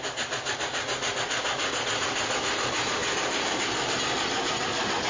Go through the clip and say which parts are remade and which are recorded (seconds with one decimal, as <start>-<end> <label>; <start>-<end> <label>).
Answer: 0.0-5.1 recorded